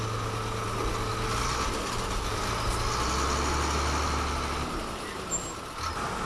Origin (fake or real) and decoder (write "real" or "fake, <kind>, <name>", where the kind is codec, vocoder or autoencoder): real